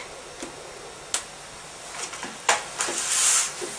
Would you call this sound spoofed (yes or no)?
no